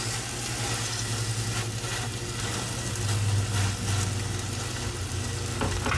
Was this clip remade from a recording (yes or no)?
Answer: no